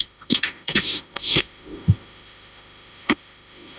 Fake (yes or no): yes